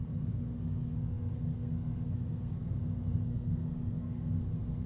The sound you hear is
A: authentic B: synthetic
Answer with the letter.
B